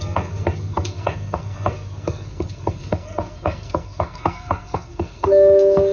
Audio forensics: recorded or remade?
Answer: remade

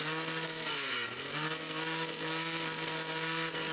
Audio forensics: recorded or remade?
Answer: remade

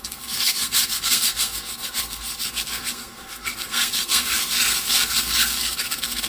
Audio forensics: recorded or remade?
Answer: remade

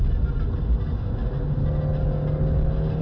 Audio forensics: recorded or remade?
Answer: recorded